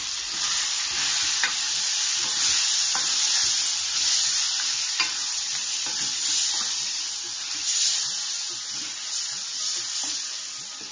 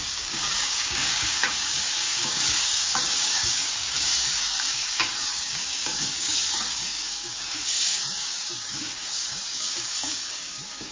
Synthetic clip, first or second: second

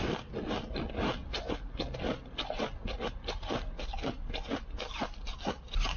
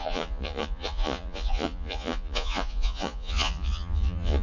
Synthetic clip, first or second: second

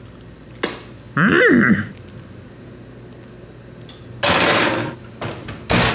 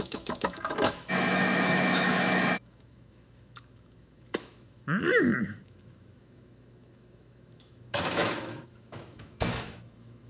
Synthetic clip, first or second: second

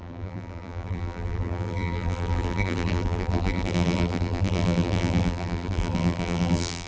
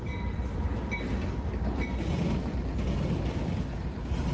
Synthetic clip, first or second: first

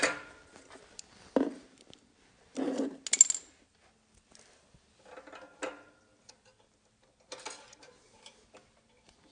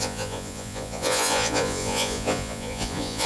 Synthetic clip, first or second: second